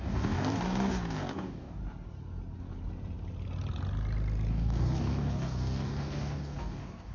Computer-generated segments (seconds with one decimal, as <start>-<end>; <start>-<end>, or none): 0.0-1.8; 4.5-7.1